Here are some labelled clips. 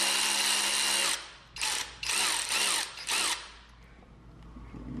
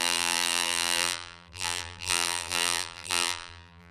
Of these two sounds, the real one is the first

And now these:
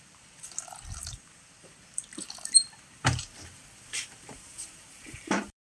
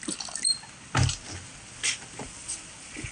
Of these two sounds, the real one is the second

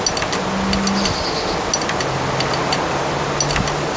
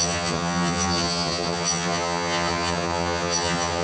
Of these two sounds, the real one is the first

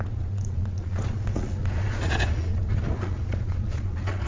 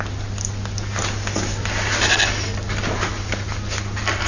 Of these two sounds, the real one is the second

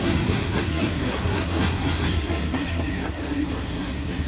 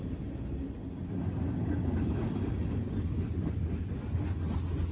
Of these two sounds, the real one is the second